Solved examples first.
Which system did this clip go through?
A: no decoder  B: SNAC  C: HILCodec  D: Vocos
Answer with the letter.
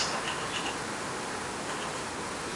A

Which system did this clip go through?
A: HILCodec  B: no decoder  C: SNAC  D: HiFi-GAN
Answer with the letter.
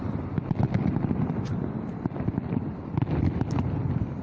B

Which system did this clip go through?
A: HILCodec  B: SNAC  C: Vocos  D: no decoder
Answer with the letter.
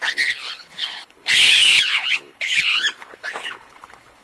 A